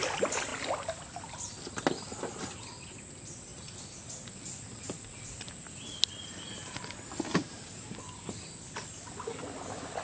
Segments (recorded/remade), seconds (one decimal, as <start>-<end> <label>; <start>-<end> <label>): 0.0-0.5 recorded; 0.5-3.1 remade; 3.1-10.0 recorded